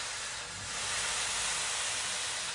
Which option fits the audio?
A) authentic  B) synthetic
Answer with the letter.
A